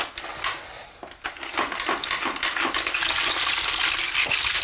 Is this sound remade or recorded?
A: recorded